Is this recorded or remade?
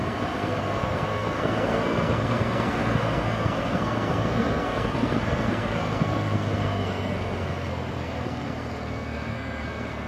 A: remade